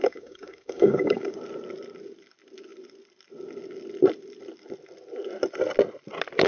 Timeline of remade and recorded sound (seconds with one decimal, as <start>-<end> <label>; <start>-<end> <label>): 0.0-1.4 remade; 1.4-6.5 recorded

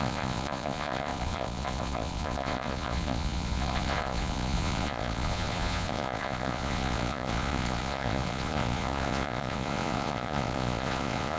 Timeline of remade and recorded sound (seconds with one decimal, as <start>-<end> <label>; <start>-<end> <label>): 0.0-11.4 remade

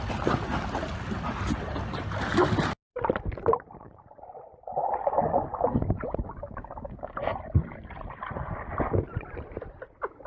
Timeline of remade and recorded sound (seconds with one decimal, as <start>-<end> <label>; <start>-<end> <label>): 0.0-10.3 recorded

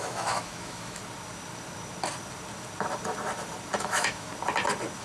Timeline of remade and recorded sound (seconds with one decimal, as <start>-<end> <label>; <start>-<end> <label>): 0.0-1.0 remade; 1.0-3.8 recorded; 3.8-4.3 remade; 4.3-5.0 recorded

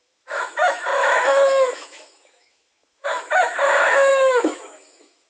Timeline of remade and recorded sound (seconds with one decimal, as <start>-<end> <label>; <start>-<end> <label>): 0.0-5.3 remade

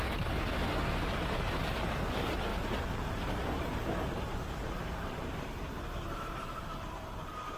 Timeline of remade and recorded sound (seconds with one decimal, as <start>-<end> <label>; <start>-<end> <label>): 0.0-7.6 remade